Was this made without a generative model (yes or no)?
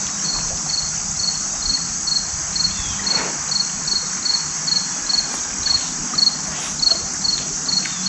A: yes